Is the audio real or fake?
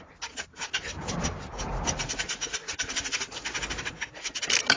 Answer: real